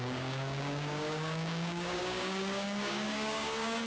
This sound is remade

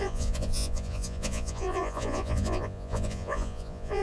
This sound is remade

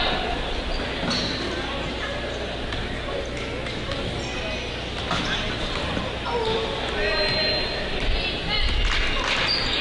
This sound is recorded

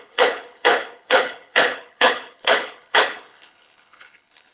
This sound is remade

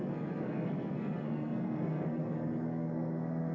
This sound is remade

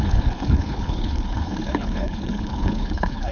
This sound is remade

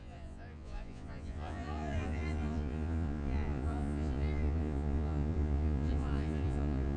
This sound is remade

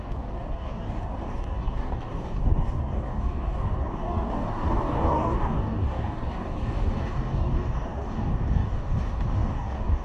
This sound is remade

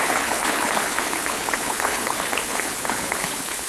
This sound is remade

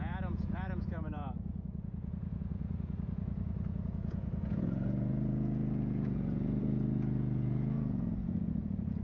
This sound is remade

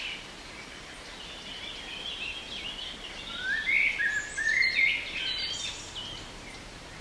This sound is recorded